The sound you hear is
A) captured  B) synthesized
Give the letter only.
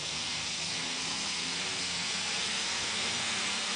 B